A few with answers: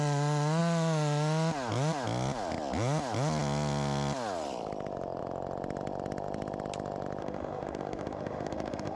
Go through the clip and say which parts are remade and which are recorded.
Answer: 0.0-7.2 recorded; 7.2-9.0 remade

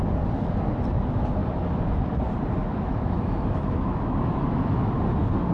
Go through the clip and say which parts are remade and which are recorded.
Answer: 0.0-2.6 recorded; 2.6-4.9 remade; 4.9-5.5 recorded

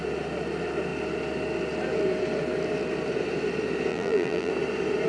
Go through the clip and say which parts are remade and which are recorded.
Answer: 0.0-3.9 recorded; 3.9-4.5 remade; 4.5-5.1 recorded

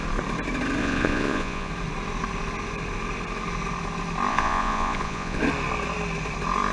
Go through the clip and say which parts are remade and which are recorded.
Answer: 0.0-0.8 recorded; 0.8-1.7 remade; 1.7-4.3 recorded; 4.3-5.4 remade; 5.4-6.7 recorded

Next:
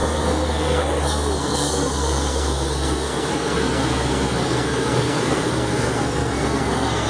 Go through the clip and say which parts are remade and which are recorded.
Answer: 0.0-7.1 remade